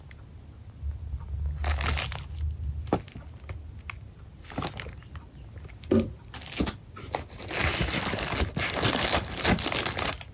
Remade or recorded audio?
recorded